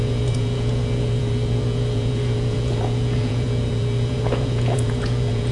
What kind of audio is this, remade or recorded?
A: remade